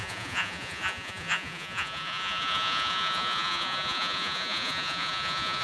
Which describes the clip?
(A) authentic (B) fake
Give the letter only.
B